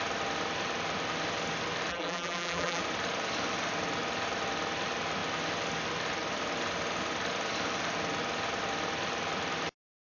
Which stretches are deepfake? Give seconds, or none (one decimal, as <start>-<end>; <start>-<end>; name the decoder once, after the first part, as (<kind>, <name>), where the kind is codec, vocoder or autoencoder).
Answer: 1.9-2.8 (vocoder, BigVGAN v2)